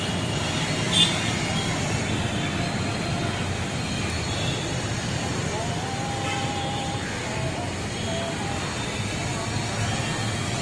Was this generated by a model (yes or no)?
no